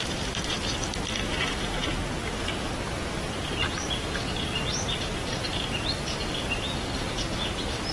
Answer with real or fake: fake